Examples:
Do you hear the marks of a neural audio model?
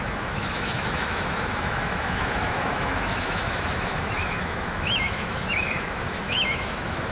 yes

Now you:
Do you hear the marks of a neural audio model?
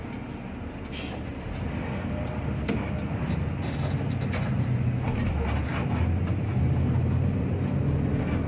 no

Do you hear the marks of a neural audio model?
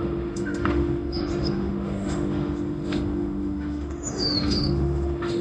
yes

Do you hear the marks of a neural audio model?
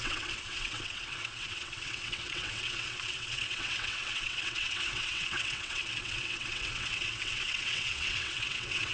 yes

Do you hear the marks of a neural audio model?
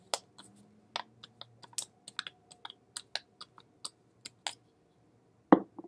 no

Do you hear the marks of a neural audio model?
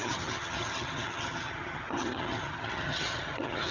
yes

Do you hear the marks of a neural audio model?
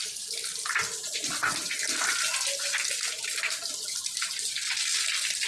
no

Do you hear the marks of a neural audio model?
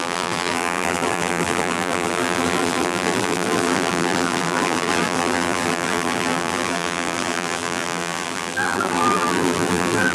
yes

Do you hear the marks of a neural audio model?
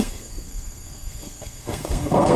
yes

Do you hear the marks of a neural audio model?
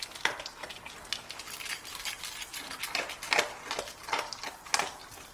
no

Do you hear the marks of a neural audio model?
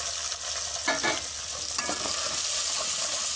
no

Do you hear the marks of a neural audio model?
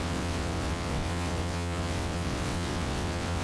yes